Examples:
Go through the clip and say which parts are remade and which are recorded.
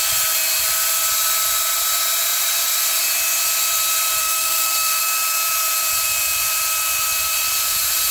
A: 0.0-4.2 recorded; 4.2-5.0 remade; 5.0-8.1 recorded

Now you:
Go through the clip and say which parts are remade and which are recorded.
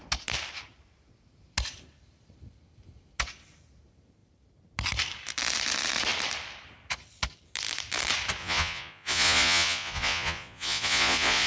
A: 0.0-8.4 recorded; 8.4-11.5 remade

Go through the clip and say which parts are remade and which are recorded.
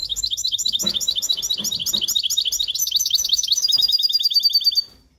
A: 0.0-1.4 remade; 1.4-2.8 recorded; 2.8-4.4 remade; 4.4-5.2 recorded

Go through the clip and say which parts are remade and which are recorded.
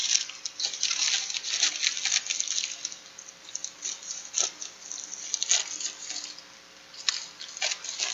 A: 0.0-8.1 recorded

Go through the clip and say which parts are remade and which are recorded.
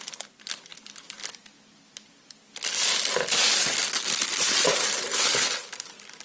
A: 0.0-6.2 recorded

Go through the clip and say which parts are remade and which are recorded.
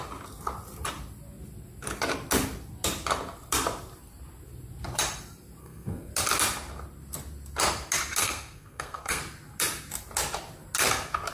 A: 0.0-5.6 recorded; 5.6-6.1 remade; 6.1-8.2 recorded; 8.2-9.2 remade; 9.2-11.3 recorded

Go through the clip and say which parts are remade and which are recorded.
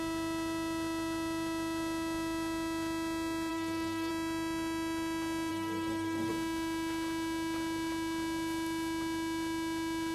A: 0.0-3.5 recorded; 3.5-4.1 remade; 4.1-5.5 recorded; 5.5-6.3 remade; 6.3-10.1 recorded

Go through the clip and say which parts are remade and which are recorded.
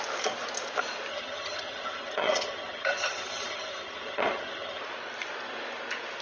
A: 0.0-1.1 recorded; 1.1-4.8 remade; 4.8-6.2 recorded